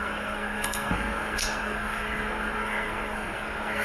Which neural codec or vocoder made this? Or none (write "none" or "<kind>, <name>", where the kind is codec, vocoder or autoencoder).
codec, SNAC